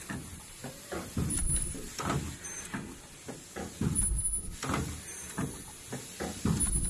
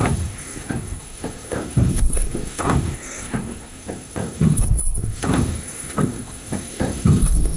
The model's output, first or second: second